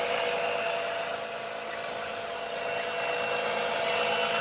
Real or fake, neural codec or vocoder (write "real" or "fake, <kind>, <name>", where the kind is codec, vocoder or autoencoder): real